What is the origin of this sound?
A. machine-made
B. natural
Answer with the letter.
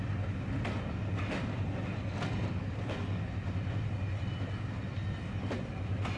B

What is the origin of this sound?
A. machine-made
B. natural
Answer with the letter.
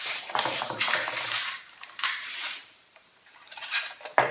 A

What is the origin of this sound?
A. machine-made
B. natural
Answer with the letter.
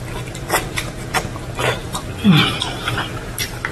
A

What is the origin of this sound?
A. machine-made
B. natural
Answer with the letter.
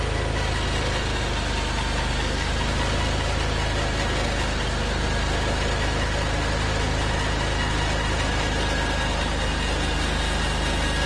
B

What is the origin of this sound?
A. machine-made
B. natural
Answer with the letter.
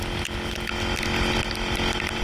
B